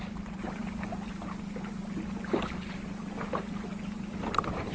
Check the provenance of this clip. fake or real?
real